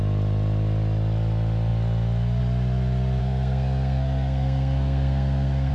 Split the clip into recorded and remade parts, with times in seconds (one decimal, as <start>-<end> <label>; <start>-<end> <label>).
0.0-3.2 recorded; 3.2-5.7 remade